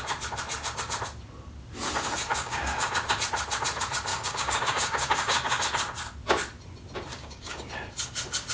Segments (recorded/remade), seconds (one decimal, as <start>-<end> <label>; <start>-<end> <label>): 0.0-2.3 recorded; 2.3-2.9 remade; 2.9-4.1 recorded; 4.1-5.6 remade; 5.6-7.1 recorded; 7.1-7.7 remade; 7.7-8.5 recorded